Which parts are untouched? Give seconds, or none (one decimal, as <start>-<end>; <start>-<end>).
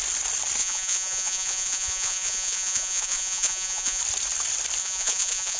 0.0-0.6; 4.0-4.8